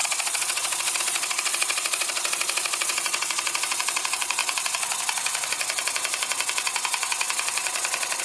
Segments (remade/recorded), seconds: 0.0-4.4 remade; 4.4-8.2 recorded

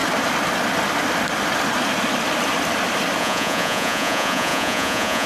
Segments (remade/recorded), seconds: 0.0-3.2 recorded; 3.2-5.3 remade

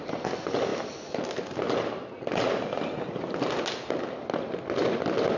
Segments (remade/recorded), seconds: 0.0-5.4 recorded

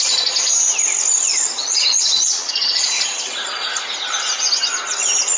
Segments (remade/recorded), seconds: 0.0-1.3 recorded; 1.3-2.9 remade; 2.9-5.4 recorded

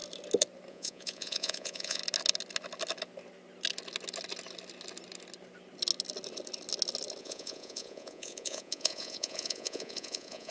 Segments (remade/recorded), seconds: 0.0-0.7 recorded; 0.7-2.0 remade; 2.0-7.2 recorded; 7.2-10.5 remade